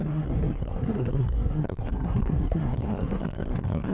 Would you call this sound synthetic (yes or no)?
yes